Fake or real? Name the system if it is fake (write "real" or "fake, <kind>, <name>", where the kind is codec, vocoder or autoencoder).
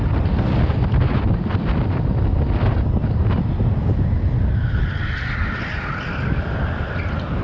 real